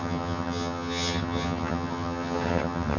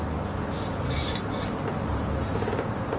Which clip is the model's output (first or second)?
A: first